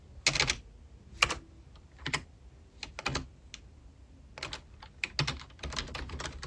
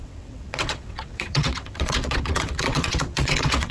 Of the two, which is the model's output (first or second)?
second